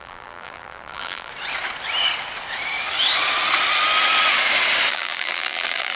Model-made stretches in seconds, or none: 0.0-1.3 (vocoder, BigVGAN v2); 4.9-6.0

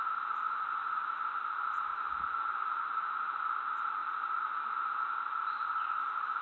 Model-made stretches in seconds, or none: none